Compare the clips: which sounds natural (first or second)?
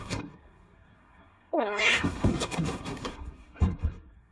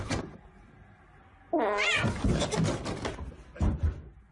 second